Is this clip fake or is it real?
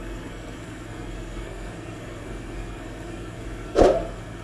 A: fake